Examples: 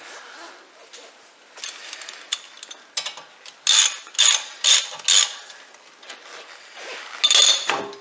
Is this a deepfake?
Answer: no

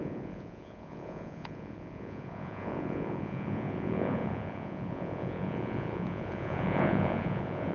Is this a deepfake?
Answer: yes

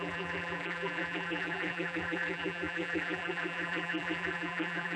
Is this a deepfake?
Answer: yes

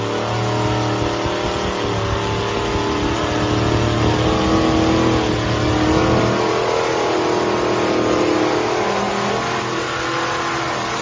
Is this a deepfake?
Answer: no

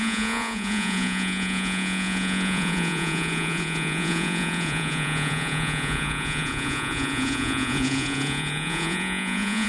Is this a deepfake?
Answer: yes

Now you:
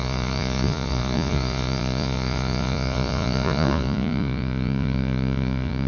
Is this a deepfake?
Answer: yes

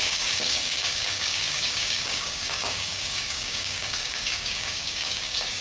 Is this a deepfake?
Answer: yes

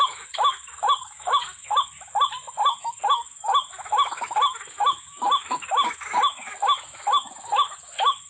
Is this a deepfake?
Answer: yes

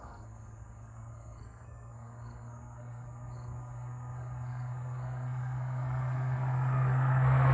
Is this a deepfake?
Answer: yes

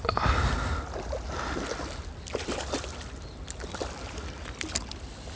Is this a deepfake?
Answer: no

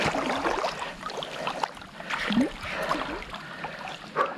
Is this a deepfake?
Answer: no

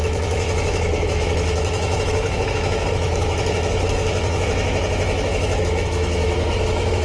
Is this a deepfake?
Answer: yes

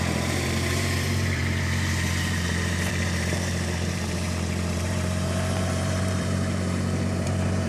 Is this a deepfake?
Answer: yes